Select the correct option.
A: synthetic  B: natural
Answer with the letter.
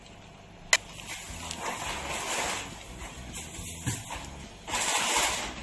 B